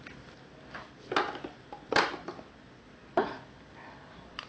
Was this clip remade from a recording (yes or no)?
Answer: no